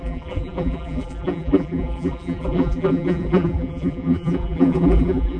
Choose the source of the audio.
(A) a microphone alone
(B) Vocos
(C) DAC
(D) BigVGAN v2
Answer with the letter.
D